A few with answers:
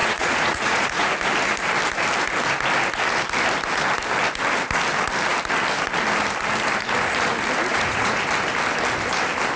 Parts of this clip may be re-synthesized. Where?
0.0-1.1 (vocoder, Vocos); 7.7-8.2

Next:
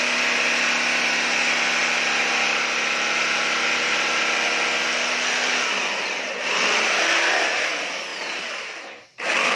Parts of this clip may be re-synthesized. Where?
none

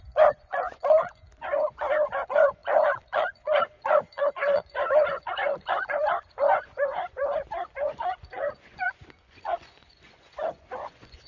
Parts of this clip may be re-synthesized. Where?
0.0-11.3 (vocoder, Vocos)

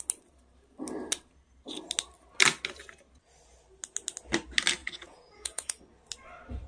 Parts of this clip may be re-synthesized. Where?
4.8-5.8 (vocoder, Vocos)

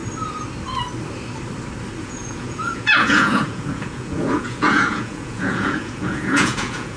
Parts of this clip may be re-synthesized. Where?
2.0-7.0 (vocoder, Vocos)